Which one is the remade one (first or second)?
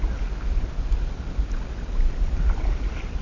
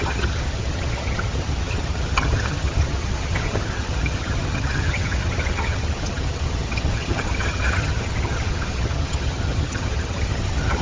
second